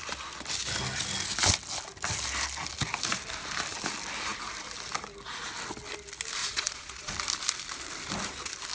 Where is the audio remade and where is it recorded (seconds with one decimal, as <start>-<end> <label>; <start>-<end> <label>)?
0.0-6.4 recorded; 6.4-7.1 remade; 7.1-8.7 recorded